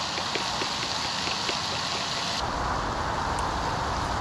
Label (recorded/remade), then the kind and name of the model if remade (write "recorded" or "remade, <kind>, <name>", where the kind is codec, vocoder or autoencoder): recorded